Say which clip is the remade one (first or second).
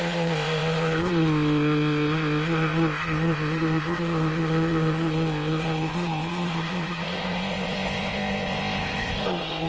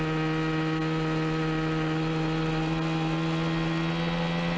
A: first